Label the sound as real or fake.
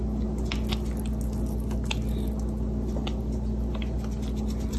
real